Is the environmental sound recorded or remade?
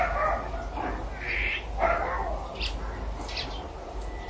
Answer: recorded